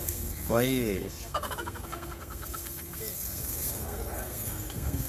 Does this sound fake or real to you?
fake